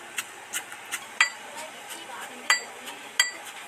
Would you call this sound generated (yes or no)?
no